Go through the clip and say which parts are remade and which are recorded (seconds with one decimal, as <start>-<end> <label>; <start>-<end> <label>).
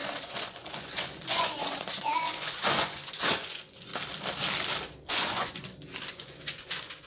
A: 0.0-3.9 remade; 3.9-5.1 recorded; 5.1-5.6 remade; 5.6-6.1 recorded; 6.1-7.1 remade